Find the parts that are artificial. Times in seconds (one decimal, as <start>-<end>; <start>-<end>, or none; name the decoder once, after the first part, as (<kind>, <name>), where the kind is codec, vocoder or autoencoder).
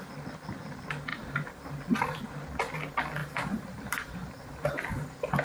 1.1-2.2 (vocoder, BigVGAN v2); 3.2-4.7